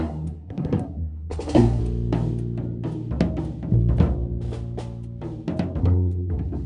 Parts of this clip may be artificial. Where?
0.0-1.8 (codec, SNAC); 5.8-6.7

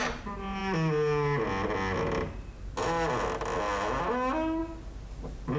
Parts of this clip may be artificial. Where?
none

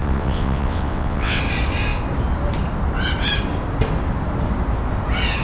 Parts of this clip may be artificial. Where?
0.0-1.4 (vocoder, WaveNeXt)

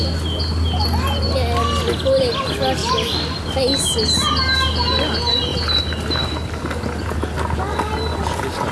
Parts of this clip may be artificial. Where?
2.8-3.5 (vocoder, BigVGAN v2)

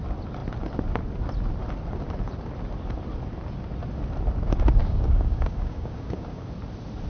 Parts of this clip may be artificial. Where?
4.8-6.4 (codec, DAC)